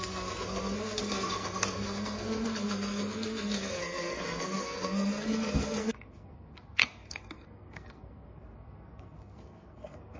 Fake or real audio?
fake